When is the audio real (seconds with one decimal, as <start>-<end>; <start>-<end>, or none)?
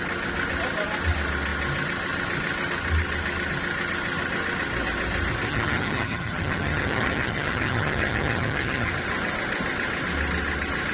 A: 0.0-5.5; 8.9-10.9